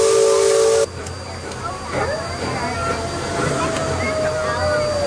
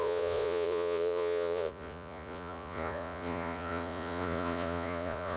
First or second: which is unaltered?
first